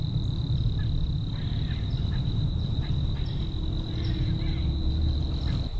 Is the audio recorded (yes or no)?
no